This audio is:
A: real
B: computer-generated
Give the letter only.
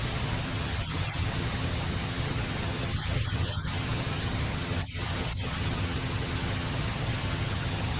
B